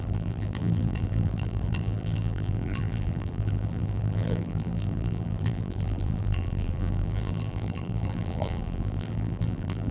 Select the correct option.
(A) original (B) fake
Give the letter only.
B